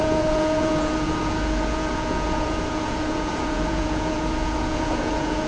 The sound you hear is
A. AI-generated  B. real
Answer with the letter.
A